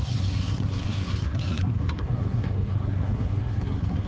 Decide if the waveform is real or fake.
fake